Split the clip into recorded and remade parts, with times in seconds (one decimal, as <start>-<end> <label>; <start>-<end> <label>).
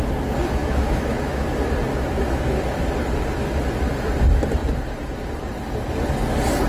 0.0-0.6 recorded; 0.6-1.5 remade; 1.5-1.9 recorded; 1.9-2.6 remade; 2.6-6.7 recorded